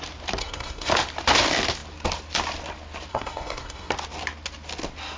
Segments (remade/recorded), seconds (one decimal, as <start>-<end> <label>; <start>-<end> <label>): 0.0-0.4 recorded; 0.4-0.9 remade; 0.9-3.1 recorded; 3.1-3.9 remade; 3.9-5.2 recorded